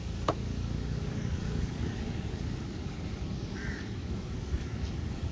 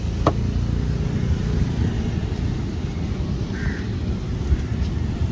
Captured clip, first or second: second